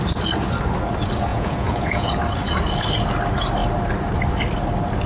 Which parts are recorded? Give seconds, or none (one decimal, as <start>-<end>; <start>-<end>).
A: 0.0-1.3; 2.1-5.1